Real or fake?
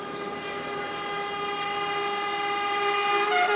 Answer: real